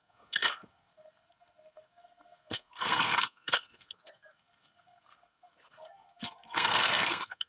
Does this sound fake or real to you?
fake